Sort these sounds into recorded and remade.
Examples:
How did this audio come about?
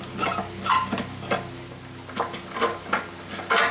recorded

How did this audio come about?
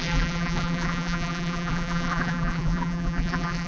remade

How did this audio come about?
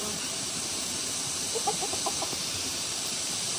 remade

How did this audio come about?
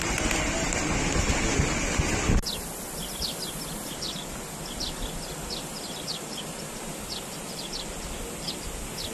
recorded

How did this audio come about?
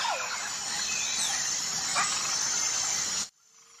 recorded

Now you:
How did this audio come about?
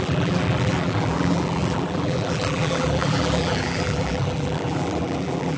remade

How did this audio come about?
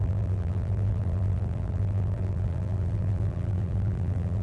remade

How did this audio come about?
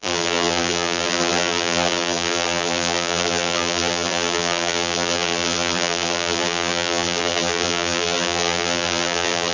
remade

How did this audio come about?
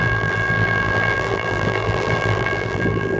remade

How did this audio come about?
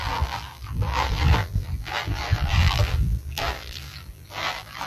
remade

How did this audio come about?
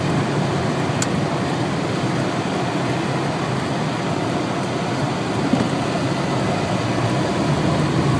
remade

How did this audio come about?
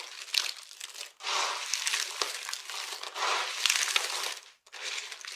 recorded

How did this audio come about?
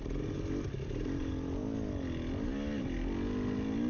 recorded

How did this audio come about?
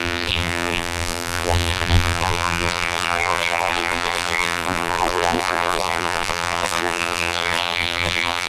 remade